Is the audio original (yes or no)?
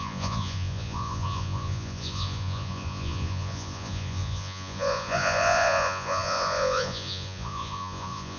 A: no